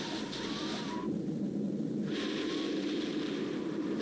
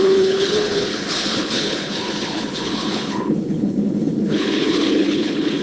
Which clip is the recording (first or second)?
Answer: first